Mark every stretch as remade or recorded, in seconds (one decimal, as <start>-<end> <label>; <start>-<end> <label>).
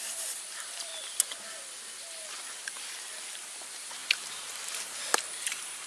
0.0-0.9 remade; 0.9-3.3 recorded; 3.3-4.0 remade; 4.0-4.8 recorded; 4.8-5.9 remade